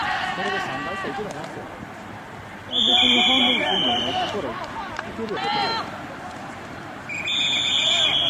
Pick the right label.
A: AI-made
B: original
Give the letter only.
A